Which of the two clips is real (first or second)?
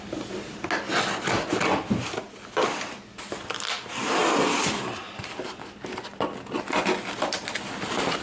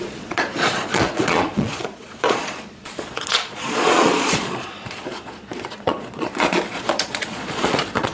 first